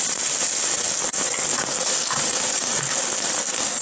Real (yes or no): yes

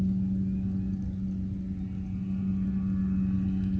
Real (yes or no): yes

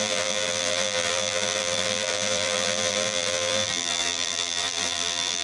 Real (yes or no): no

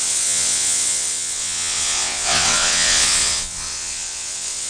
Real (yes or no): no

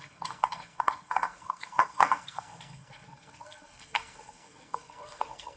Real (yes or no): no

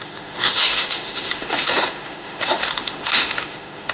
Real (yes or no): no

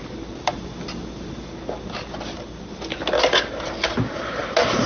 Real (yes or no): yes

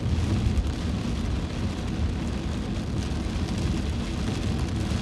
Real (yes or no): yes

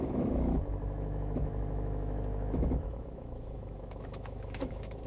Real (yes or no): no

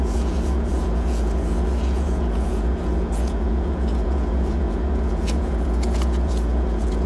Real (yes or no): no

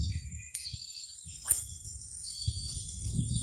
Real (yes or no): no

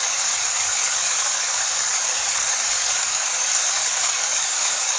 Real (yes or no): no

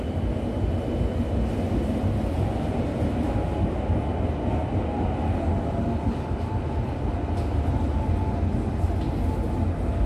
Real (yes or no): yes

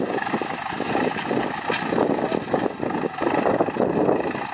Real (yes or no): yes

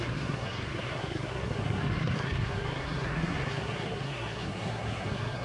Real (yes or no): no